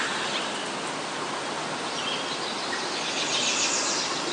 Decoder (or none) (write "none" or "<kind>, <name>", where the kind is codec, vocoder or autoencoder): none